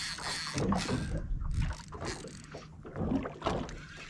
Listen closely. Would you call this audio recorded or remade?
recorded